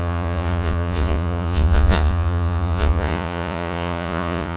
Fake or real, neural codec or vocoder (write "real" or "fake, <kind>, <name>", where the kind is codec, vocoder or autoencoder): fake, vocoder, Vocos